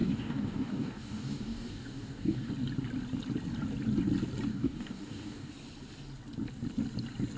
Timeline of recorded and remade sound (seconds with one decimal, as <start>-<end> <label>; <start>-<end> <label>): 0.0-2.5 remade; 2.5-4.5 recorded; 4.5-5.5 remade; 5.5-7.4 recorded

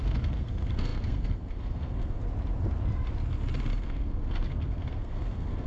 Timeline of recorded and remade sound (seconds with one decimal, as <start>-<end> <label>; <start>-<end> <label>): 0.0-2.2 remade; 2.2-3.8 recorded; 3.8-5.7 remade